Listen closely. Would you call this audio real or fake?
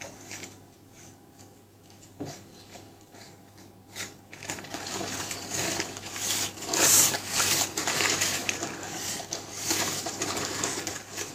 fake